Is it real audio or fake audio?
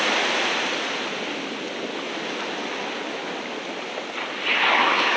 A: real